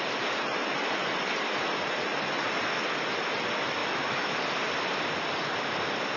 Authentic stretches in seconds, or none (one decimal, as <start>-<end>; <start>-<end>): 0.0-3.8; 4.3-6.2